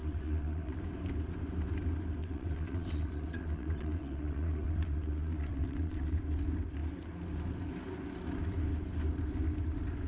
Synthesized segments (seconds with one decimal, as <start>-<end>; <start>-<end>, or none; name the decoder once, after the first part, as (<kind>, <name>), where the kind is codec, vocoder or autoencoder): 0.0-0.8 (vocoder, WaveNeXt); 2.2-6.2